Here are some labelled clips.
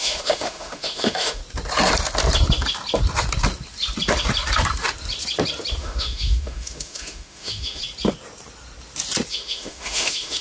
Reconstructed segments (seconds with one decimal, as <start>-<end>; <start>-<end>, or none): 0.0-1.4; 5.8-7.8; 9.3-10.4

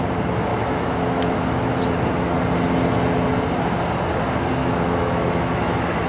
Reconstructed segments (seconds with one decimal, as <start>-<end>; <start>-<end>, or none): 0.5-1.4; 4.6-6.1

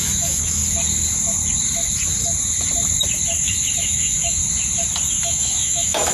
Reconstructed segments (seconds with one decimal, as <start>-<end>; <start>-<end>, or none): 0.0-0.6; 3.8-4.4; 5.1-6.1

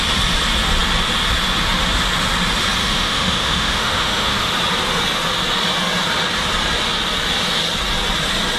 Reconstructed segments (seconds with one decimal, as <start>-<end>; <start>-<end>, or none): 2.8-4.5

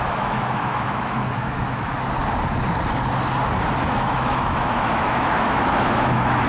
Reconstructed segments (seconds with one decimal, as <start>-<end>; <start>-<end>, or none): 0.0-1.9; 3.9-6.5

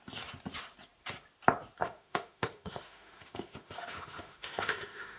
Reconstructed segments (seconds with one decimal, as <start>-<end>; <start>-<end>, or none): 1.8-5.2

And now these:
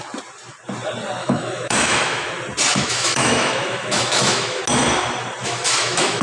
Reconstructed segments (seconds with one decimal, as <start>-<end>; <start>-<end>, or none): 1.2-2.3; 2.7-4.6; 5.4-6.2

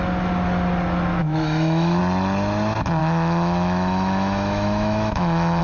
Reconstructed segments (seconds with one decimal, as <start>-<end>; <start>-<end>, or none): 1.2-2.0; 3.0-5.6